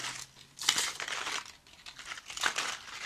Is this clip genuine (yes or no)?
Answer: yes